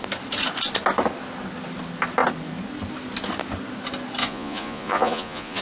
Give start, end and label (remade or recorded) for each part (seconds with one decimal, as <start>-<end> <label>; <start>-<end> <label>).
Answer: 0.0-4.2 recorded; 4.2-5.6 remade